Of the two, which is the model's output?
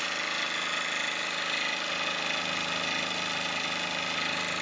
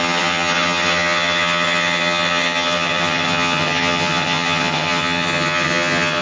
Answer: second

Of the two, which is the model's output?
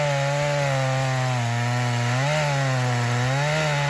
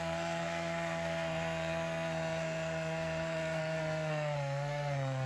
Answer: second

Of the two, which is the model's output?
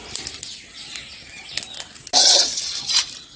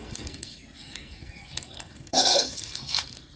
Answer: second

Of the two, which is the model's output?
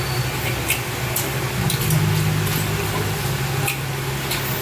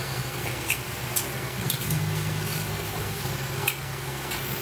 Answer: second